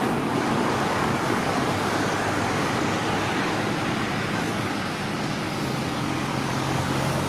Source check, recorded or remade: remade